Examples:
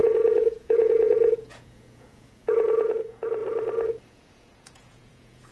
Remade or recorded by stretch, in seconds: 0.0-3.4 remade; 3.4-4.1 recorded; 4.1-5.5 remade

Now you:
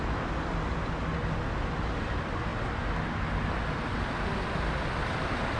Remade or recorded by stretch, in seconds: 0.0-5.6 recorded

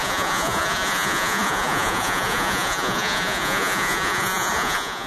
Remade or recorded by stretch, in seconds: 0.0-5.1 remade

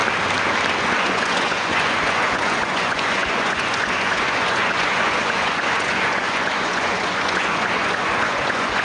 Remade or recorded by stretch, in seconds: 0.0-0.8 recorded; 0.8-8.8 remade